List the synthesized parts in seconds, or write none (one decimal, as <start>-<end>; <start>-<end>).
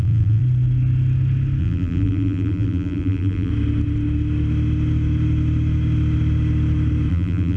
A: 0.0-0.4; 1.6-3.5; 7.1-7.6